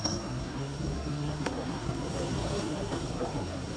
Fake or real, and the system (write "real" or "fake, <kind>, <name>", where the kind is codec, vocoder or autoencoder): fake, codec, SNAC